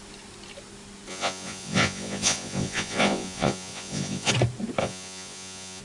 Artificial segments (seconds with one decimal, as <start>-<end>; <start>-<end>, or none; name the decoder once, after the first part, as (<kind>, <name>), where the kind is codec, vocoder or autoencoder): 1.1-4.3 (vocoder, Vocos); 4.8-5.8